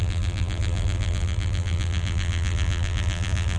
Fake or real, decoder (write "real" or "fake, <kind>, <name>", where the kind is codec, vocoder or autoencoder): fake, vocoder, BigVGAN v2